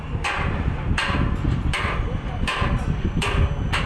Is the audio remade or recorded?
remade